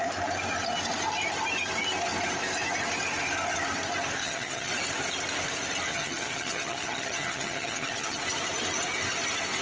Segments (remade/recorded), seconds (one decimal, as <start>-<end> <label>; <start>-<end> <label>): 0.0-4.2 recorded; 4.2-4.7 remade; 4.7-5.9 recorded; 5.9-8.2 remade; 8.2-9.6 recorded